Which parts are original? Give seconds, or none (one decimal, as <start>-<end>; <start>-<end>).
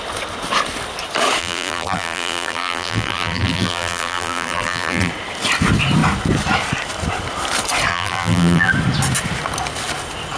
0.0-1.4; 5.1-7.9; 8.7-10.4